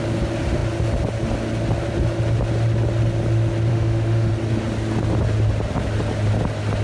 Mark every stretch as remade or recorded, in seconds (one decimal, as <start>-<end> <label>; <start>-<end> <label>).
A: 0.0-3.7 recorded; 3.7-4.3 remade; 4.3-6.8 recorded